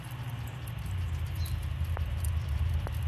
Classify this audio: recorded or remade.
recorded